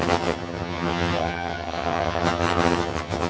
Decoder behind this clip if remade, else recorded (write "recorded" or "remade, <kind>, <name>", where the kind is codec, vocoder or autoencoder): remade, vocoder, HiFi-GAN